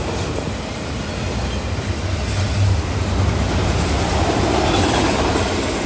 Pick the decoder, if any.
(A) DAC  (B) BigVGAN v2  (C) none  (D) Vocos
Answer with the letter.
C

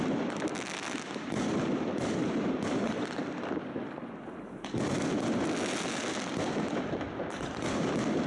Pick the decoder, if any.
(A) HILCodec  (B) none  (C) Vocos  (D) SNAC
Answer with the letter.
B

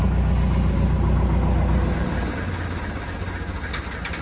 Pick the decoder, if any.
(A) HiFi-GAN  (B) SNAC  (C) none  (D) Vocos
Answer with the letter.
C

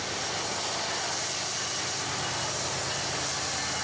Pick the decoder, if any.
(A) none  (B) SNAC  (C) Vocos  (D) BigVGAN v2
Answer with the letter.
A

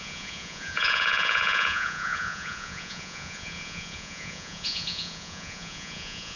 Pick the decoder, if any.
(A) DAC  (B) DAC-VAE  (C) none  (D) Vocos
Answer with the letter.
D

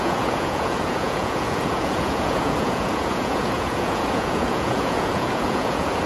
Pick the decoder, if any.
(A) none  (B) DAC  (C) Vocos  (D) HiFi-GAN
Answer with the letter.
C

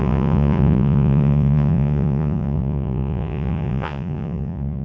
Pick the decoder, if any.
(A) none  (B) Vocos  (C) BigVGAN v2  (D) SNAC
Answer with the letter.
B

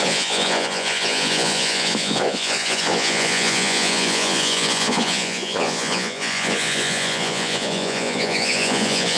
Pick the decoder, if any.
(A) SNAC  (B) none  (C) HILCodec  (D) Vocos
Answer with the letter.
D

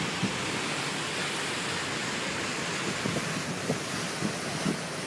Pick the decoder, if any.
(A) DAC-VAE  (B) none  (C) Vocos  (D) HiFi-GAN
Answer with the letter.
B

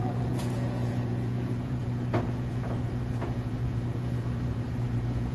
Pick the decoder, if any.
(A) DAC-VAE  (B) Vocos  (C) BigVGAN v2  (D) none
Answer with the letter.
B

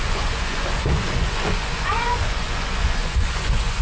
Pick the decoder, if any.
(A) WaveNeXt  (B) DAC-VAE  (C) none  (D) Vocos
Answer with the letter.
D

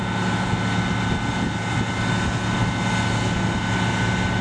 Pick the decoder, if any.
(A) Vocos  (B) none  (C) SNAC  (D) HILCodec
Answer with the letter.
B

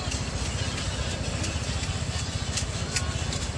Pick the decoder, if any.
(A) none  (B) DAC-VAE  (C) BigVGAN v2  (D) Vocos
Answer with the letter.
A